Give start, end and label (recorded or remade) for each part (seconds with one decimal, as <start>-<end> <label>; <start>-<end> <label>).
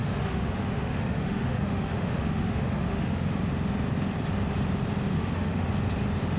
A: 0.0-3.4 remade; 3.4-5.1 recorded; 5.1-5.7 remade; 5.7-6.4 recorded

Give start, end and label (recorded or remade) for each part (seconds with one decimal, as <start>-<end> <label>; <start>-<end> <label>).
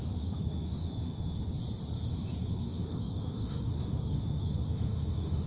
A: 0.0-1.4 remade; 1.4-2.1 recorded; 2.1-5.5 remade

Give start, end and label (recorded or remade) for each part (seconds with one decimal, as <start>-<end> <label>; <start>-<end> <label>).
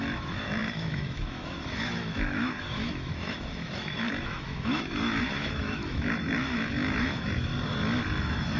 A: 0.0-7.5 remade; 7.5-8.2 recorded; 8.2-8.6 remade